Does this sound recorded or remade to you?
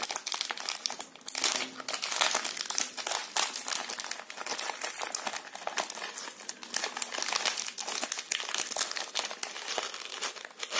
recorded